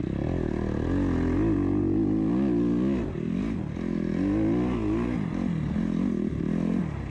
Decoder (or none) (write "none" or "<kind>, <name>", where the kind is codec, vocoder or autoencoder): none